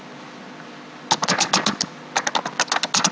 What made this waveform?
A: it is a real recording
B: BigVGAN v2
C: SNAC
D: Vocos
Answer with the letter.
A